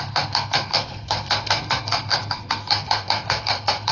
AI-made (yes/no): yes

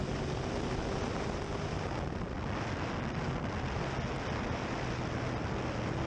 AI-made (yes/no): no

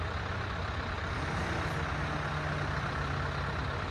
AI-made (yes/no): no